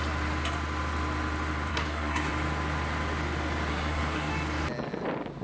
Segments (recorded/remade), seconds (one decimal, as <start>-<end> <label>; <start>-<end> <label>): 0.0-1.7 recorded; 1.7-2.3 remade; 2.3-3.7 recorded; 3.7-4.3 remade; 4.3-5.4 recorded